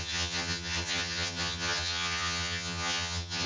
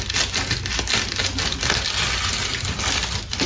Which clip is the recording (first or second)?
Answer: second